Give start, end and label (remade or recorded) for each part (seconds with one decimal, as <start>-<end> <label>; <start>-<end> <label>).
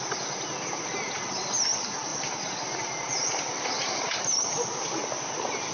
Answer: 0.0-2.1 recorded; 2.1-5.7 remade